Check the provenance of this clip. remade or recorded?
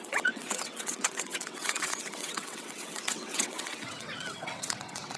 remade